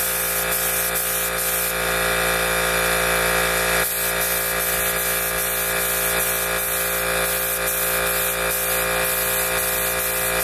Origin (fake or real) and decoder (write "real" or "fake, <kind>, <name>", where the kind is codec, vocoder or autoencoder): real